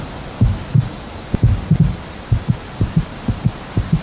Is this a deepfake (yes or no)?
no